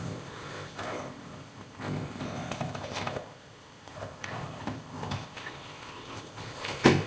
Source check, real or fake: fake